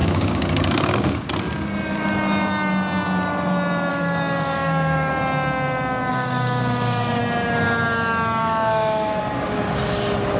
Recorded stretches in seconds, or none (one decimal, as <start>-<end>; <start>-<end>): 1.3-3.9; 5.1-6.1; 7.2-8.4; 9.2-10.4